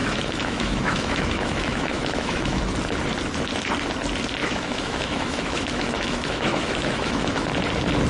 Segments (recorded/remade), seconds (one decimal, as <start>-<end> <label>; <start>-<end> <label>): 0.0-2.6 remade; 2.6-4.4 recorded; 4.4-7.5 remade; 7.5-8.1 recorded